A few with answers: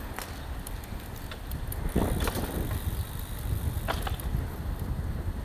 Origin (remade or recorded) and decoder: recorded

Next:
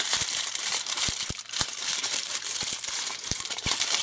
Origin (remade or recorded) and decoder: remade, vocoder, BigVGAN v2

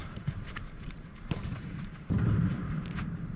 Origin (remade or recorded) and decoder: remade, vocoder, BigVGAN v2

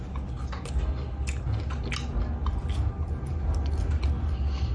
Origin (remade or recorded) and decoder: recorded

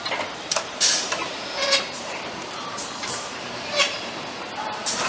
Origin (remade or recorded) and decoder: remade, vocoder, BigVGAN v2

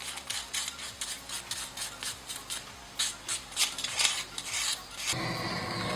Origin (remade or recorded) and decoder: recorded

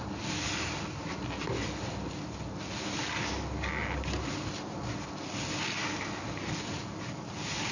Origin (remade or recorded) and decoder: recorded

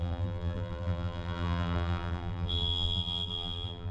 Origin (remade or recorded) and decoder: remade, vocoder, BigVGAN v2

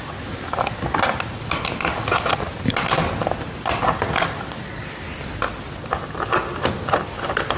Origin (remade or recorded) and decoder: recorded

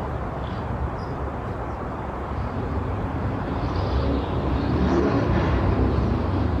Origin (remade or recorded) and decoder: remade, vocoder, BigVGAN v2